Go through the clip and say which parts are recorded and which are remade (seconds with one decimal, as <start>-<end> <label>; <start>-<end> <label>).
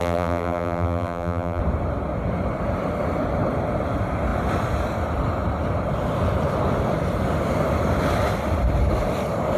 0.0-1.6 remade; 1.6-9.6 recorded